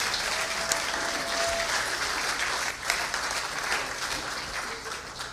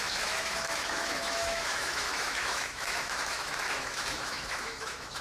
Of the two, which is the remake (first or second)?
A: second